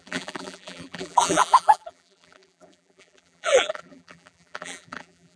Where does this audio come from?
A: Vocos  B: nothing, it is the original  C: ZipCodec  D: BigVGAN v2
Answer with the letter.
D